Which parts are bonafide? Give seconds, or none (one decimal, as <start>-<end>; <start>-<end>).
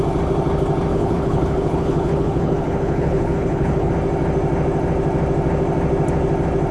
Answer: 0.0-0.9; 3.9-6.7